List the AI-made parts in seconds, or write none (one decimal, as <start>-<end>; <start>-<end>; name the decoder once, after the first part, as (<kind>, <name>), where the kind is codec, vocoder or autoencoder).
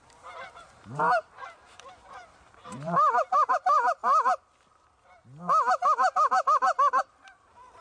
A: 0.0-4.0 (vocoder, BigVGAN v2); 7.0-7.8